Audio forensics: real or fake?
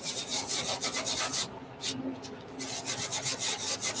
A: real